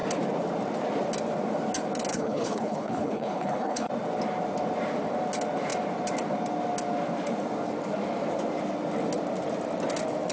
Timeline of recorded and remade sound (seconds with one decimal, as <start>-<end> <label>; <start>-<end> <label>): 0.0-2.1 recorded; 2.1-3.9 remade; 3.9-10.3 recorded